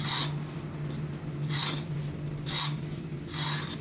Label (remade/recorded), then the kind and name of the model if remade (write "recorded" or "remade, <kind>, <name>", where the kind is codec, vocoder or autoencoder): recorded